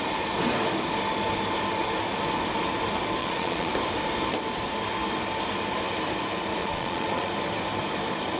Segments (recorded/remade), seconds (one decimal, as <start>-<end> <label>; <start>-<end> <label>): 0.0-3.2 recorded; 3.2-3.7 remade; 3.7-6.6 recorded; 6.6-7.3 remade; 7.3-8.4 recorded